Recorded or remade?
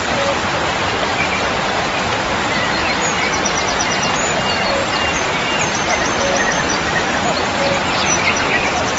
recorded